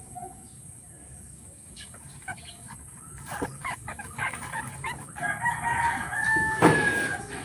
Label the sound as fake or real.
fake